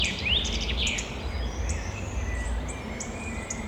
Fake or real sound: fake